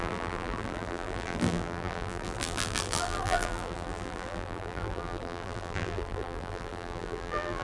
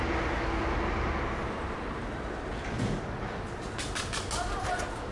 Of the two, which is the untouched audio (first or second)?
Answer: second